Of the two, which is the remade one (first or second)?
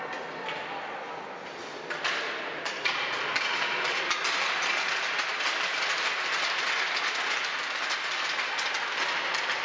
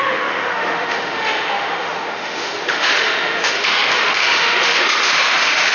second